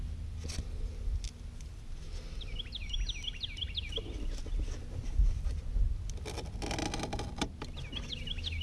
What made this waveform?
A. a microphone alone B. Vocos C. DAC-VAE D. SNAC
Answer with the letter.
A